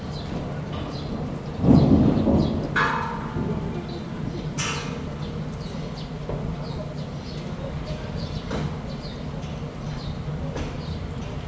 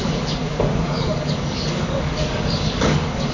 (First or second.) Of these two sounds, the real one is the first